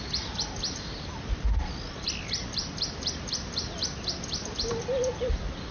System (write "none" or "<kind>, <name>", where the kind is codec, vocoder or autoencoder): none